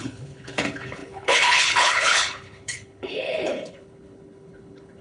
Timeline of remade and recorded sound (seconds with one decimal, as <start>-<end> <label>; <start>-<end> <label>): 0.0-5.0 remade